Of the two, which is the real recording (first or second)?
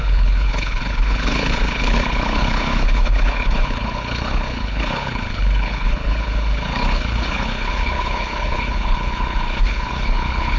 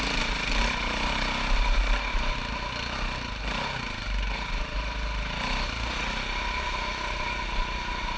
second